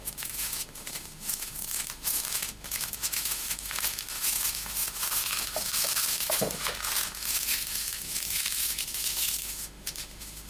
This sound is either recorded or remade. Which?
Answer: remade